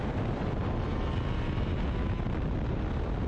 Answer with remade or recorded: recorded